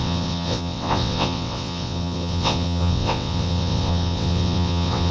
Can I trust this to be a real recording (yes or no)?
no